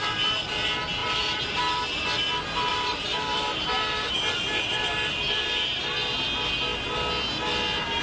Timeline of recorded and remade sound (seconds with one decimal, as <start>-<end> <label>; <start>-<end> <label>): 0.0-1.0 recorded; 1.0-1.6 remade; 1.6-2.7 recorded; 2.7-5.8 remade; 5.8-8.0 recorded